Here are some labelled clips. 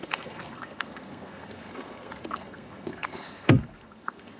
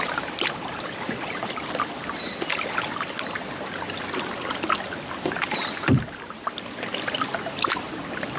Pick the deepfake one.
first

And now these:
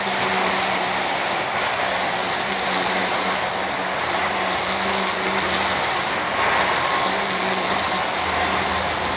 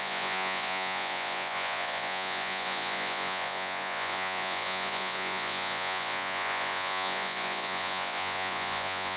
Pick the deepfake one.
second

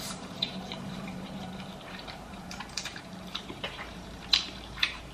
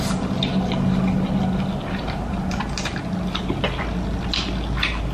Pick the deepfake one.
first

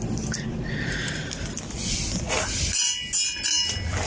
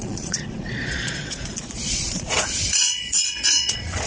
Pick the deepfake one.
second